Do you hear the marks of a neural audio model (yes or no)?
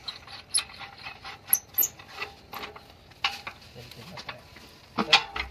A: no